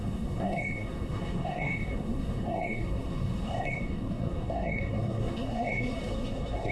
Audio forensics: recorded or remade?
remade